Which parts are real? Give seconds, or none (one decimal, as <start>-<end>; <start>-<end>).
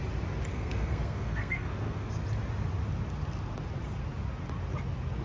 0.0-0.5; 2.1-5.2